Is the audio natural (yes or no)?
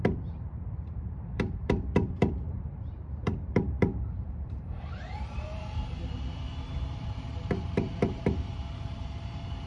no